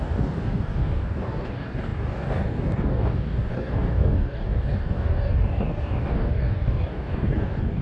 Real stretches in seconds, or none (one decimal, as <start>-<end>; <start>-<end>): none